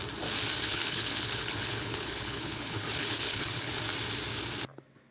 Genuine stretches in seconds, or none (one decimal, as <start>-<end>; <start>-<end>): 0.0-0.7; 3.8-5.1